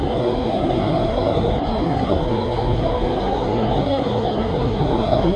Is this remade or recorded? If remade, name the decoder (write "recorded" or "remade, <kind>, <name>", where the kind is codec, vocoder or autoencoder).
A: remade, codec, SNAC